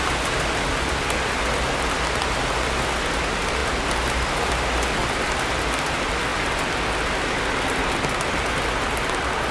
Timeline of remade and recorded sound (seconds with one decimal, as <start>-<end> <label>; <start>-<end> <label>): 0.0-3.6 recorded; 3.6-4.5 remade; 4.5-9.5 recorded